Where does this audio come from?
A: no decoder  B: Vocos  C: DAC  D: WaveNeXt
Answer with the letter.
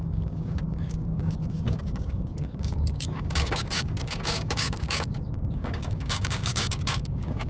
C